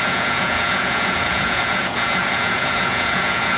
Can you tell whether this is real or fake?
fake